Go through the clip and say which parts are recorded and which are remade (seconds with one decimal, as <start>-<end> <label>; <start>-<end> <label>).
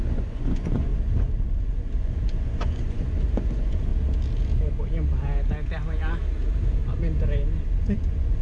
0.0-0.9 remade; 0.9-1.6 recorded; 1.6-3.9 remade; 3.9-7.8 recorded; 7.8-8.4 remade